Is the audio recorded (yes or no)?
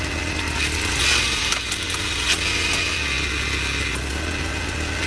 yes